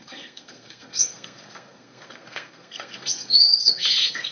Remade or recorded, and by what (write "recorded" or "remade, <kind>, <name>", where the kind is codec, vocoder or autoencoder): remade, codec, SNAC